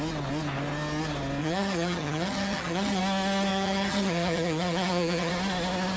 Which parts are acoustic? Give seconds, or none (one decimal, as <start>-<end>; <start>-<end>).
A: 0.0-1.4; 3.0-3.5; 5.3-6.0